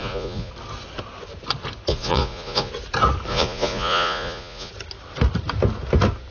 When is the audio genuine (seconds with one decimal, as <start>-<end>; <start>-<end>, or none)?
0.5-1.9; 2.7-3.3; 4.7-6.3